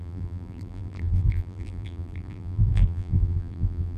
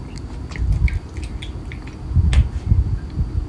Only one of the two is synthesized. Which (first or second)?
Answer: first